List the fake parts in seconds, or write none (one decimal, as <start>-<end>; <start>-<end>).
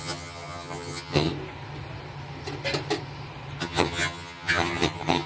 0.0-1.3; 3.6-5.3